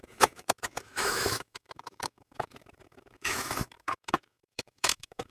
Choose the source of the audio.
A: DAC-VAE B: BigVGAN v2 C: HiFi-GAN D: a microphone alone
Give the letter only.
A